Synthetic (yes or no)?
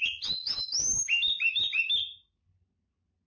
no